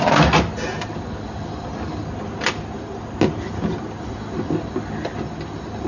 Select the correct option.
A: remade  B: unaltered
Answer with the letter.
B